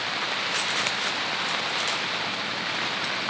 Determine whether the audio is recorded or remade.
recorded